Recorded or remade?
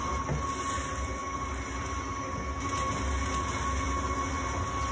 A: recorded